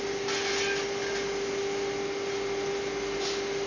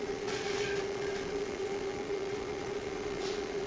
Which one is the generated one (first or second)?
second